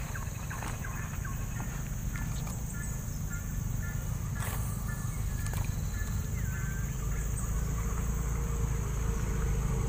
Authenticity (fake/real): real